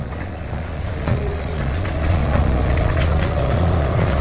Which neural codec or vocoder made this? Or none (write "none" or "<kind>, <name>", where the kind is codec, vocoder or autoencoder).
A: vocoder, Vocos